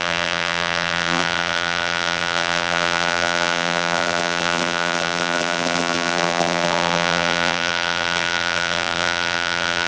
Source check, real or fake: fake